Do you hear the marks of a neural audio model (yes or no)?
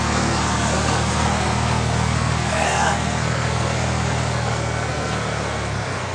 yes